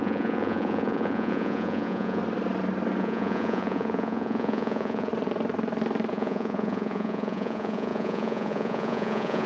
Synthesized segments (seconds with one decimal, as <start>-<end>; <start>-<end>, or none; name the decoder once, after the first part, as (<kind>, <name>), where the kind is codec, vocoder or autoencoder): 0.0-2.2 (vocoder, Vocos); 3.0-5.1; 6.1-9.5